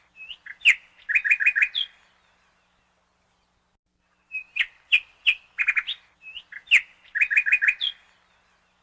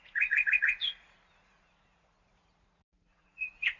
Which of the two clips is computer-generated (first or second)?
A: second